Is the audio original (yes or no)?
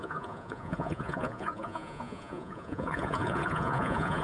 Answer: no